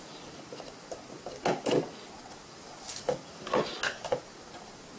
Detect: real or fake real